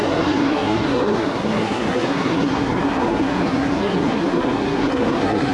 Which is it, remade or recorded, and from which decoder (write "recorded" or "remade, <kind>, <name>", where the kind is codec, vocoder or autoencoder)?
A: remade, codec, SNAC